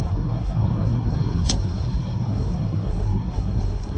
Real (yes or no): no